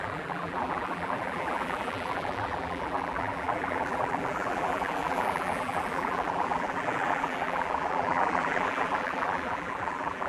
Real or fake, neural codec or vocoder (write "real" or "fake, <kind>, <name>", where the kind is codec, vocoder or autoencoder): fake, vocoder, BigVGAN v2